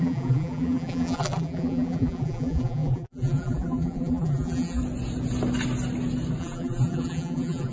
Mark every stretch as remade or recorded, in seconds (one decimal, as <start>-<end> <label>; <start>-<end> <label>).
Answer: 0.0-4.8 remade; 4.8-6.4 recorded; 6.4-7.7 remade